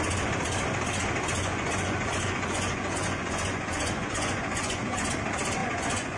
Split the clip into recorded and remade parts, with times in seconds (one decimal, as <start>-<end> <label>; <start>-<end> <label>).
0.0-1.4 recorded; 1.4-5.1 remade; 5.1-5.6 recorded; 5.6-6.2 remade